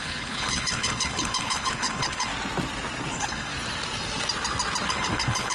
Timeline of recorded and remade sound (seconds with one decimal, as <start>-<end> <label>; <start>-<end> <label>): 0.0-2.3 remade; 2.3-3.1 recorded; 3.1-3.5 remade; 3.5-4.9 recorded; 4.9-5.5 remade